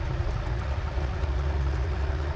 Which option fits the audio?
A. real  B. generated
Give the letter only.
B